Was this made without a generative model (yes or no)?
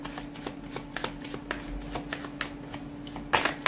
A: yes